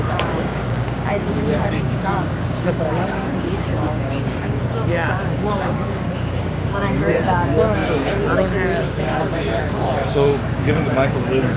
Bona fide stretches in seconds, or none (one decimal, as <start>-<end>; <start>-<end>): none